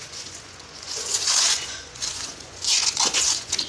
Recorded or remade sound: remade